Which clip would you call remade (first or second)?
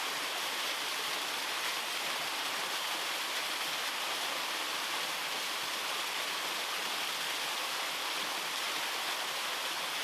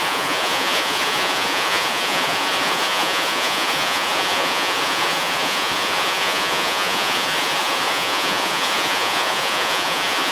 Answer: second